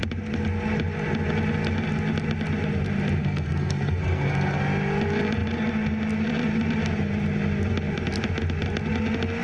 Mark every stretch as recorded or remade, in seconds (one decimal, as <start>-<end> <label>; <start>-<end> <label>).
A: 0.0-3.2 recorded; 3.2-4.6 remade; 4.6-9.4 recorded

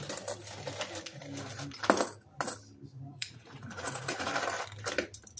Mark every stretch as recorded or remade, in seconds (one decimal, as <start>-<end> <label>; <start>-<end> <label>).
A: 0.0-3.1 recorded; 3.1-4.3 remade; 4.3-5.4 recorded

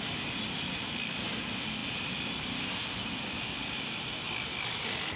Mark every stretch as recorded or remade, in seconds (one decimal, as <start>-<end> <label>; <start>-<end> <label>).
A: 0.0-5.2 recorded

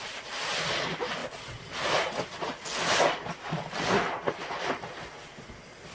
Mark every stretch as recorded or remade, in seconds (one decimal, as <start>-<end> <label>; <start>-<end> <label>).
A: 0.0-5.9 recorded

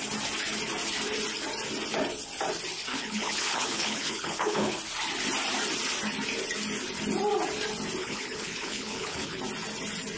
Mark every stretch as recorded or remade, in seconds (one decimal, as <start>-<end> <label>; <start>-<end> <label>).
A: 0.0-2.9 recorded; 2.9-4.8 remade; 4.8-8.0 recorded; 8.0-9.4 remade; 9.4-10.2 recorded

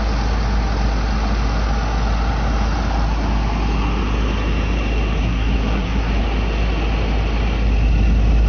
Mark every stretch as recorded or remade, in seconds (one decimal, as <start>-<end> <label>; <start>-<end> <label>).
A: 0.0-5.2 recorded; 5.2-6.1 remade; 6.1-8.5 recorded

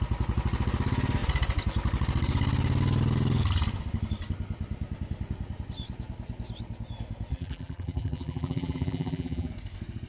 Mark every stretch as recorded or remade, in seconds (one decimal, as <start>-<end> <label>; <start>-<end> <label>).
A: 0.0-7.3 recorded; 7.3-9.5 remade; 9.5-10.1 recorded